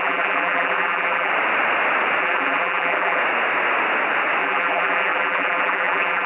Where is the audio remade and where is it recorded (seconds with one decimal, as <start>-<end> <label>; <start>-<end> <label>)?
0.0-1.3 remade; 1.3-2.2 recorded; 2.2-3.2 remade; 3.2-4.4 recorded; 4.4-6.3 remade